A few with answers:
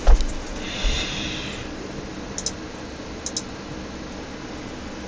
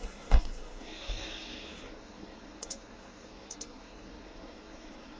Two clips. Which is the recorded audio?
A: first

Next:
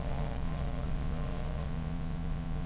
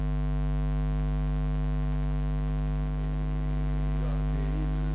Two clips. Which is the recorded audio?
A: second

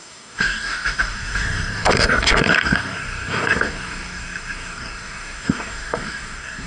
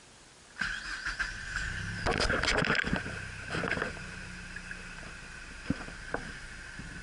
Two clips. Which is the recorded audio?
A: second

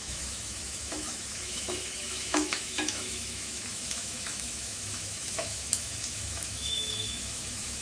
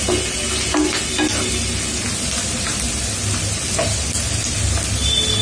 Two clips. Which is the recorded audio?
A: second